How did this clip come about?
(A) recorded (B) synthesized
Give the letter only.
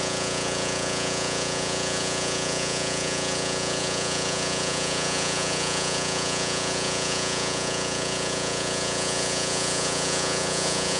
B